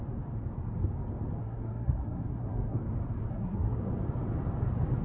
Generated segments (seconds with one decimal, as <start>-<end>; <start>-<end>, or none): 1.4-2.8; 3.3-3.9